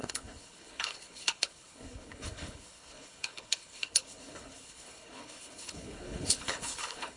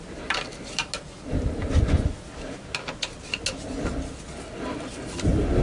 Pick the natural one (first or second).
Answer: second